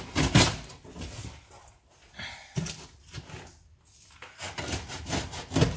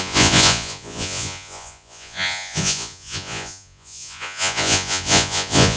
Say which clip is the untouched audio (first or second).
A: first